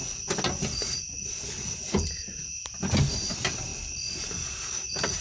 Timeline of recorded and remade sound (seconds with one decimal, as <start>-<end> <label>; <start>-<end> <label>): 0.0-3.1 recorded; 3.1-3.7 remade; 3.7-5.2 recorded